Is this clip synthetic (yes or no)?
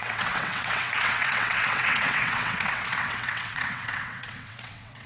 yes